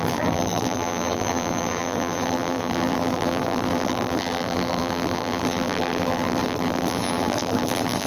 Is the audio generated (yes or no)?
yes